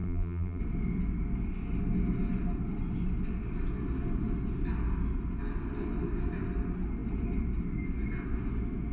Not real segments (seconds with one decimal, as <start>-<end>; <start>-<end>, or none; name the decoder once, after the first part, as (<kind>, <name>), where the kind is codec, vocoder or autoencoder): 0.0-0.6 (vocoder, BigVGAN v2)

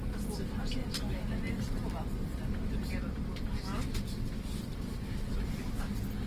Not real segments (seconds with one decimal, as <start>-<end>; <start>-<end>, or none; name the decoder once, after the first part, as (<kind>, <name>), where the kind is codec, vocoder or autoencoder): 0.8-4.6 (vocoder, BigVGAN v2)